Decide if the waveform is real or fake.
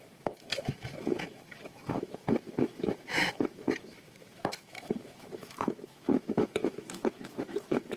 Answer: fake